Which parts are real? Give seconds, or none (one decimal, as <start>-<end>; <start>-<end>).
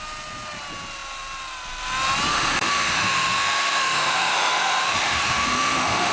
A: 0.0-2.3